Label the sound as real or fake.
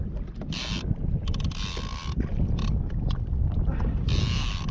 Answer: real